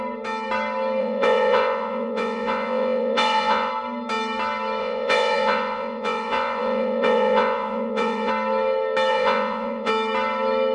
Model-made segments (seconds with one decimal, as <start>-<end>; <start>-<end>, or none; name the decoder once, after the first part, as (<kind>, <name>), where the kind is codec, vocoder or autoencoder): 1.0-3.7 (vocoder, Vocos); 4.8-8.3; 9.1-9.9